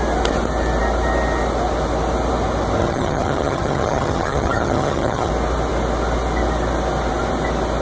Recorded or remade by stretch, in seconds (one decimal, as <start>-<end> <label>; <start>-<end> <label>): 0.0-2.8 recorded; 2.8-5.3 remade; 5.3-7.8 recorded